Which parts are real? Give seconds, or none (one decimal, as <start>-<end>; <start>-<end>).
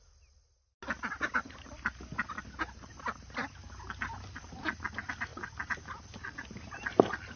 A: 0.0-7.4